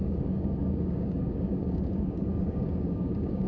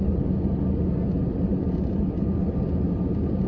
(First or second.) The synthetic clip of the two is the first